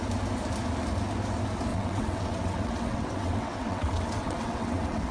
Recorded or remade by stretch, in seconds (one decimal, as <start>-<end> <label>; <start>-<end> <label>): 0.0-1.7 recorded; 1.7-5.1 remade